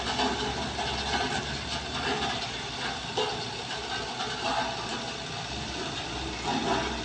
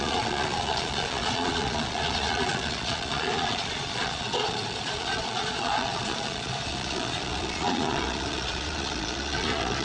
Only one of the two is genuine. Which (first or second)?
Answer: first